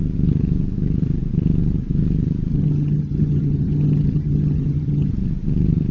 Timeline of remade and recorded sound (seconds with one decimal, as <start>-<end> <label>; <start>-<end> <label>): 0.0-2.5 recorded; 2.5-5.1 remade; 5.1-5.9 recorded